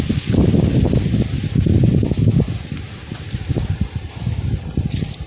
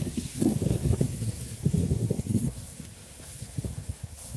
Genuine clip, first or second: first